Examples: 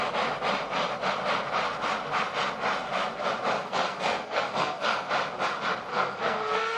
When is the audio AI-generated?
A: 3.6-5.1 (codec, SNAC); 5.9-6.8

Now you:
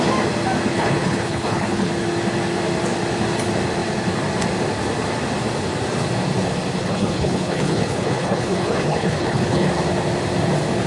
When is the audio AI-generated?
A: 0.7-1.9 (codec, HILCodec); 6.8-9.7

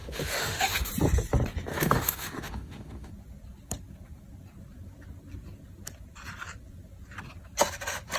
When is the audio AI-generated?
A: 0.0-0.9 (autoencoder, DAC-VAE); 1.7-3.1

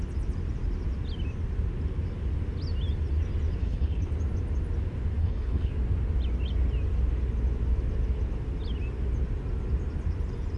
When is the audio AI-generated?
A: 3.6-4.1 (codec, HILCodec); 5.2-5.7

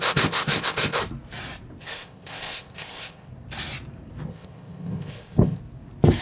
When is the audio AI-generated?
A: 0.0-1.0 (codec, ZipCodec); 1.8-3.3; 4.3-5.6

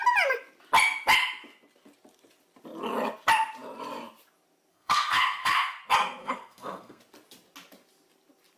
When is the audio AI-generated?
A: 4.7-5.8 (codec, SNAC); 6.2-7.0